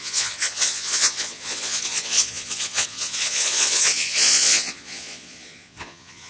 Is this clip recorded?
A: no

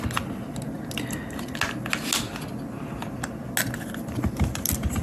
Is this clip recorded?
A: yes